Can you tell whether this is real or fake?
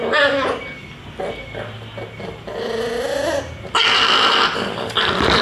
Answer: real